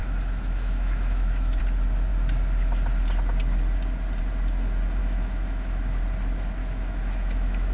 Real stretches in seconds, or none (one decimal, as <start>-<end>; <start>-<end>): 1.6-5.0; 6.0-6.6